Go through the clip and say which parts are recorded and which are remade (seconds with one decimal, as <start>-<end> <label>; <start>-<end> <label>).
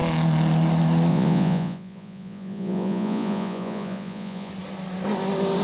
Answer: 0.0-1.1 recorded; 1.1-4.5 remade; 4.5-5.6 recorded